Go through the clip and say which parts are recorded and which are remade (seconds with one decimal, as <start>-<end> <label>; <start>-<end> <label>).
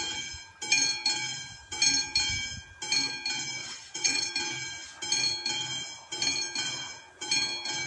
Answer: 0.0-3.6 recorded; 3.6-4.3 remade; 4.3-7.9 recorded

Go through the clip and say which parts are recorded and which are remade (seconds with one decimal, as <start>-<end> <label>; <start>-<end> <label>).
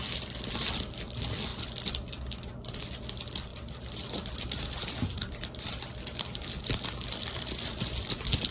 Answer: 0.0-3.5 recorded; 3.5-6.5 remade; 6.5-8.5 recorded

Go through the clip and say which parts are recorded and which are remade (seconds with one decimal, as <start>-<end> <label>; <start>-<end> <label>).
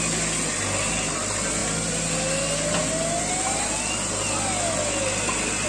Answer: 0.0-5.7 recorded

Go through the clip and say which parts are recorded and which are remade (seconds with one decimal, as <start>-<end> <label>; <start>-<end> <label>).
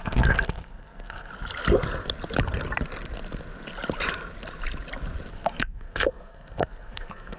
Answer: 0.0-1.3 remade; 1.3-5.3 recorded; 5.3-7.4 remade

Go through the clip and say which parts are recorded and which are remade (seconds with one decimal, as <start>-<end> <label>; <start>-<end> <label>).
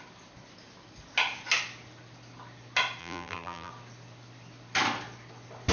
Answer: 0.0-3.0 recorded; 3.0-3.7 remade; 3.7-5.7 recorded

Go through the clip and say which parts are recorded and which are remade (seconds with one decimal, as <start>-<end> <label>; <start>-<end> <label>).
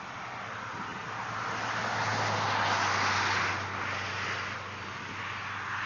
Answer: 0.0-5.9 recorded